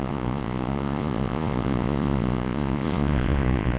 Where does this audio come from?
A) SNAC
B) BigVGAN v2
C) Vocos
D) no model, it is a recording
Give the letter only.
C